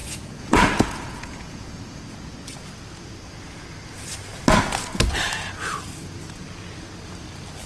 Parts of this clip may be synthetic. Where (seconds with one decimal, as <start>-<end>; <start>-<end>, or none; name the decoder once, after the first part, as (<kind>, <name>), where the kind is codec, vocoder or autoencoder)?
0.0-2.0 (vocoder, Vocos)